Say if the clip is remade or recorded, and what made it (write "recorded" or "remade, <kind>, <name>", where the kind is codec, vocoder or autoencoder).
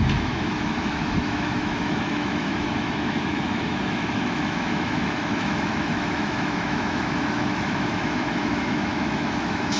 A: remade, autoencoder, DAC-VAE